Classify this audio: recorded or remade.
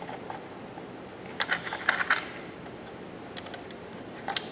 recorded